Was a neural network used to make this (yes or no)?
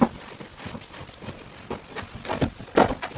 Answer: no